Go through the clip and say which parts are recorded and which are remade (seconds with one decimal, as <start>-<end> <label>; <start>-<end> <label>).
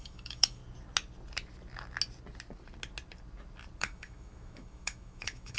0.0-0.6 remade; 0.6-3.8 recorded; 3.8-5.6 remade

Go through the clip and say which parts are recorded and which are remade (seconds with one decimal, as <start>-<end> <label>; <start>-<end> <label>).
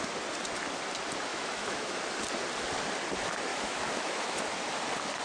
0.0-1.3 recorded; 1.3-2.0 remade; 2.0-3.5 recorded; 3.5-4.4 remade; 4.4-5.2 recorded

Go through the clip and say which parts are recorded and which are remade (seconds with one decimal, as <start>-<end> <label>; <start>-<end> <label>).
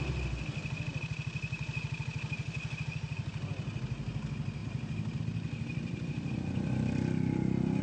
0.0-7.8 recorded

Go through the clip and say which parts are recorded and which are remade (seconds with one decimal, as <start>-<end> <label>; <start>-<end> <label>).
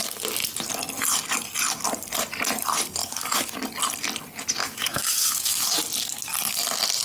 0.0-3.0 recorded; 3.0-3.6 remade; 3.6-4.6 recorded; 4.6-5.6 remade; 5.6-7.0 recorded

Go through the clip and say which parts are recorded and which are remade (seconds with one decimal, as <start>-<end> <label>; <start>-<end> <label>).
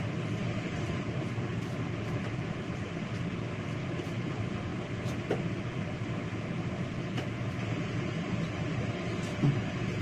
0.0-10.0 recorded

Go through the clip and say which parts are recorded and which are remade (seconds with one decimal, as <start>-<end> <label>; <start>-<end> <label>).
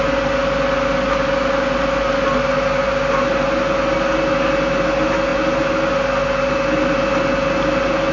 0.0-8.1 recorded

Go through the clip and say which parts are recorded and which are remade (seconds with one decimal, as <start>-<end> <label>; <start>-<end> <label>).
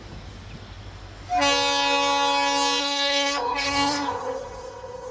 0.0-2.8 recorded; 2.8-5.1 remade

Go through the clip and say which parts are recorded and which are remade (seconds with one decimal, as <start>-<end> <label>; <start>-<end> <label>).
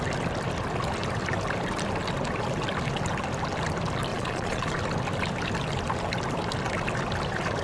0.0-4.1 recorded; 4.1-4.6 remade; 4.6-7.6 recorded